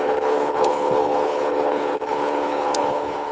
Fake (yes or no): yes